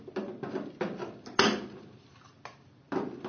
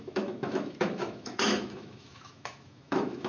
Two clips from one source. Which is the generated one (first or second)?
second